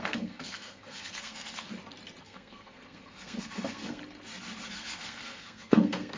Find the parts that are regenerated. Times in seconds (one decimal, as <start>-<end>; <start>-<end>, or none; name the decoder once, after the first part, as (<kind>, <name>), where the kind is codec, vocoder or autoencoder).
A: 0.0-1.7 (codec, SNAC); 2.2-4.0; 4.7-6.2